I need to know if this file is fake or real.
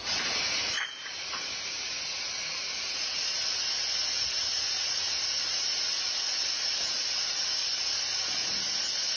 real